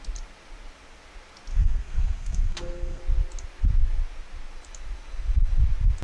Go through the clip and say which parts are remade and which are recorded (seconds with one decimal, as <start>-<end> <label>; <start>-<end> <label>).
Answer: 0.0-1.5 recorded; 1.5-3.0 remade; 3.0-6.0 recorded